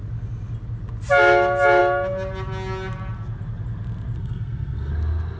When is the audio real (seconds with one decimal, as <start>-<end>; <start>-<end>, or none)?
0.0-4.2; 4.9-5.4